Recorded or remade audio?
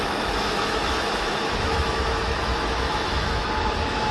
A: remade